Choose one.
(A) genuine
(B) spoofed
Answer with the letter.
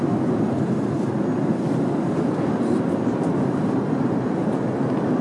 A